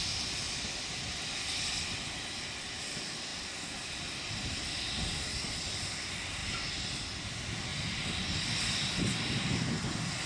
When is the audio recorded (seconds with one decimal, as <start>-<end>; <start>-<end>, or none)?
0.0-10.3